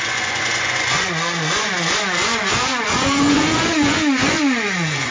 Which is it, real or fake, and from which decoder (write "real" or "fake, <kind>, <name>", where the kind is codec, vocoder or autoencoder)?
fake, vocoder, Vocos